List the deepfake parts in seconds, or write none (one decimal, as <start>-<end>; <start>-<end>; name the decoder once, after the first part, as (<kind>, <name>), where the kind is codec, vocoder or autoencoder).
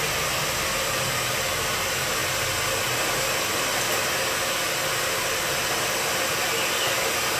none